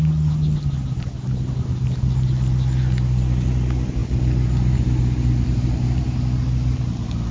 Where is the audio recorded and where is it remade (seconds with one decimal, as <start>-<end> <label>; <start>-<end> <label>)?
0.0-7.3 recorded